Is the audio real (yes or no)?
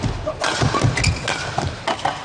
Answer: yes